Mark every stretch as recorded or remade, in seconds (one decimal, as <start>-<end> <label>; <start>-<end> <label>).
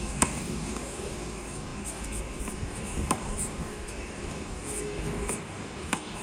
0.0-6.2 remade